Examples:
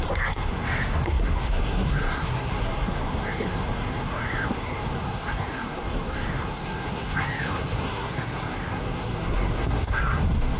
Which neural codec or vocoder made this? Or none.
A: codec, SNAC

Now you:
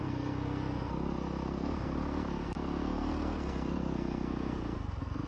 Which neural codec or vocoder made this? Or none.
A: codec, SNAC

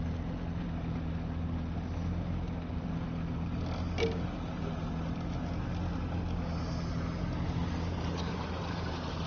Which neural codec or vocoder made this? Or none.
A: none